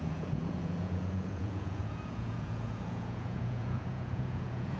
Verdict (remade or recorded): remade